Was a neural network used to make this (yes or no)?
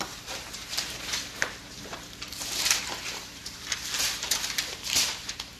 yes